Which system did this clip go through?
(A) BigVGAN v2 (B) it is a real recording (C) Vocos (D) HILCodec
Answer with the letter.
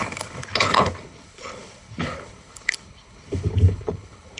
D